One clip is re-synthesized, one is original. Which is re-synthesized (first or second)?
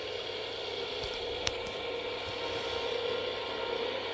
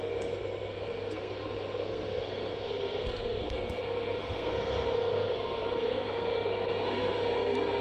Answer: second